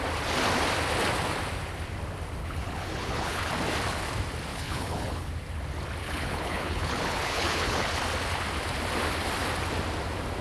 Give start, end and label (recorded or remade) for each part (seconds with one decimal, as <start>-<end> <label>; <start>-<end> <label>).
0.0-2.4 recorded; 2.4-3.5 remade; 3.5-4.5 recorded; 4.5-5.3 remade; 5.3-6.0 recorded; 6.0-7.9 remade; 7.9-10.4 recorded